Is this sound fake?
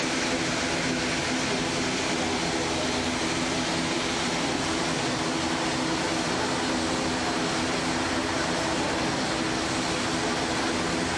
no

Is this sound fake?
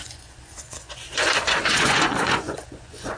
yes